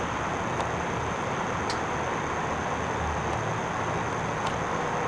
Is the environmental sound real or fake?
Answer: real